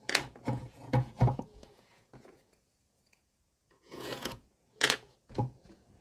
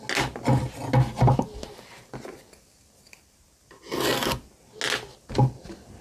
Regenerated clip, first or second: first